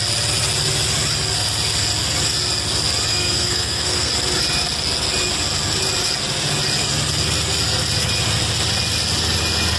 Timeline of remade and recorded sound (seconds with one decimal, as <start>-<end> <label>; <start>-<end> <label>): 0.0-3.1 recorded; 3.1-4.1 remade; 4.1-9.8 recorded